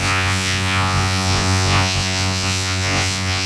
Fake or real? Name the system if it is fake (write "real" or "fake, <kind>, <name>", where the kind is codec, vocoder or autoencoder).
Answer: fake, vocoder, Vocos